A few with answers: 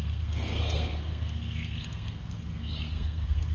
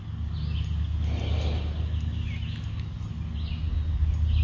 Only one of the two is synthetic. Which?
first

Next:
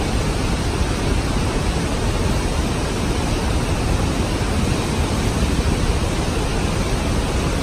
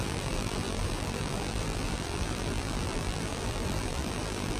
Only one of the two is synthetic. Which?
second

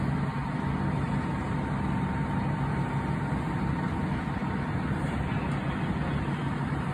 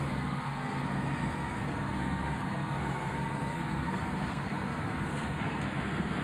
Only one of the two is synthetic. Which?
second